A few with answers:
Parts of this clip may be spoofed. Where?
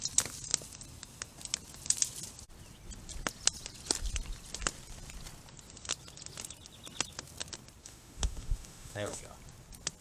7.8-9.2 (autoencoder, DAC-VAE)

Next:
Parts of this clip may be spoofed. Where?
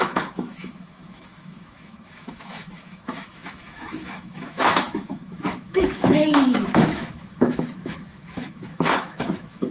0.0-9.7 (autoencoder, DAC-VAE)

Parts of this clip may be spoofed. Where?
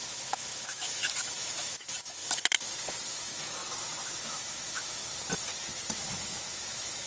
0.0-2.2 (autoencoder, DAC-VAE); 3.1-3.6; 4.2-5.0; 6.1-7.1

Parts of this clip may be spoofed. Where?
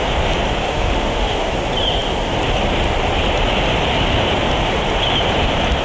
0.6-1.5 (autoencoder, DAC-VAE)